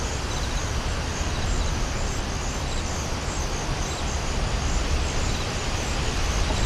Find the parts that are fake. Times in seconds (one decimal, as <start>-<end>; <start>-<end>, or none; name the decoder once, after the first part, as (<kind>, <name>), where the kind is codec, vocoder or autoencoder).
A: none